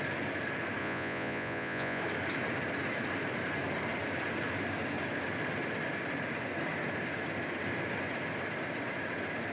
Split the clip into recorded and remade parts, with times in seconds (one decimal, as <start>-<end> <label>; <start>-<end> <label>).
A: 0.0-0.8 recorded; 0.8-2.0 remade; 2.0-9.5 recorded